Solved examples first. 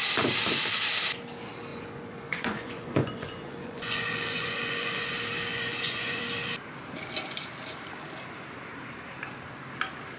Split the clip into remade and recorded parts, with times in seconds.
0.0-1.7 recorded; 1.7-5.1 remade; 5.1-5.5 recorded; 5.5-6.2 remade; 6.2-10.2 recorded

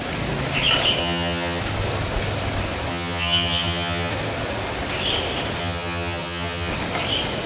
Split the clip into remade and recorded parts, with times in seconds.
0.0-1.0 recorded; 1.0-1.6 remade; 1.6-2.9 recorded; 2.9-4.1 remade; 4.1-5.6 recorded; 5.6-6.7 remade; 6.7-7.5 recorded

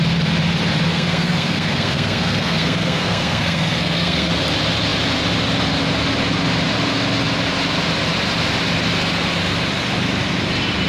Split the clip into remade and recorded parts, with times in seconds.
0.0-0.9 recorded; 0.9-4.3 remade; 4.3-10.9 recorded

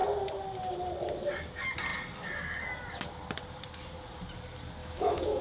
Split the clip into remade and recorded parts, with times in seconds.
0.0-4.8 recorded; 4.8-5.4 remade

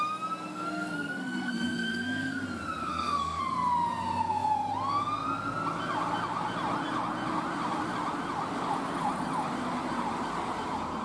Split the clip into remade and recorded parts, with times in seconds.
0.0-0.5 recorded; 0.5-2.4 remade; 2.4-2.8 recorded; 2.8-3.4 remade; 3.4-11.0 recorded

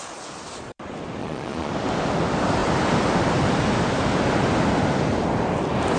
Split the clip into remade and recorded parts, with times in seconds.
0.0-1.2 recorded; 1.2-1.7 remade; 1.7-6.0 recorded